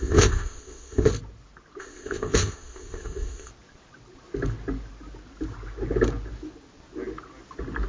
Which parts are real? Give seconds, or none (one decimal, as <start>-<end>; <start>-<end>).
1.1-1.8; 3.5-7.9